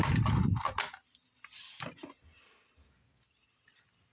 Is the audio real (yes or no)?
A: yes